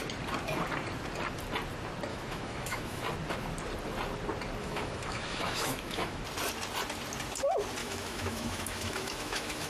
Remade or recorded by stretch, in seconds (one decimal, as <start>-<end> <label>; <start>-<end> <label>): 0.0-2.1 recorded; 2.1-3.0 remade; 3.0-4.6 recorded; 4.6-6.2 remade; 6.2-7.8 recorded; 7.8-9.7 remade